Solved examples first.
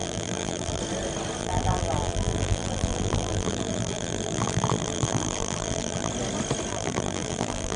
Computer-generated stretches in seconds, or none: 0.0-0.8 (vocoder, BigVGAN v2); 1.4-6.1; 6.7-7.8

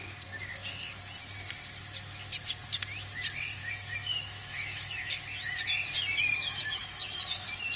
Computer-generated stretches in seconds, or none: 3.6-5.2 (autoencoder, DAC-VAE); 6.3-7.2

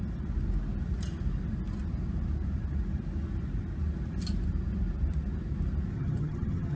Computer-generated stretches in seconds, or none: 5.9-6.8 (vocoder, HiFi-GAN)

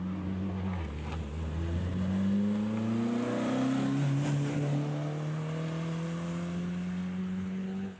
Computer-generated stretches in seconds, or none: 7.2-8.0 (codec, HILCodec)

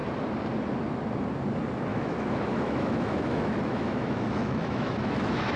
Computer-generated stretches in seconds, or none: 1.9-5.6 (autoencoder, DAC-VAE)

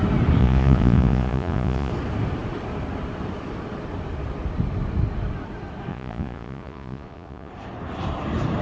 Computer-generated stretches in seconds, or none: 0.4-1.9 (vocoder, Vocos); 5.9-7.5

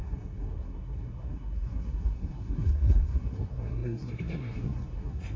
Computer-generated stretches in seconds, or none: 0.0-5.4 (codec, SNAC)

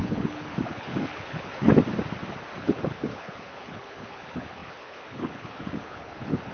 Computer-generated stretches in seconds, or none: 0.0-1.7 (codec, HILCodec); 2.6-6.5